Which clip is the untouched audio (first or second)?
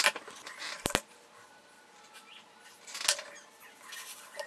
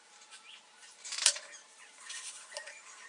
first